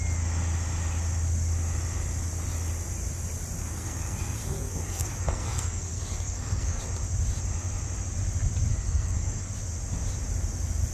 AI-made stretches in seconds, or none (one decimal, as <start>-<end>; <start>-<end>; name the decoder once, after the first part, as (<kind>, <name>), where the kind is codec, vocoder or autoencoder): 3.6-6.8 (codec, SNAC); 8.7-9.5